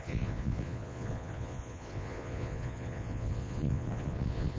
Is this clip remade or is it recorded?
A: remade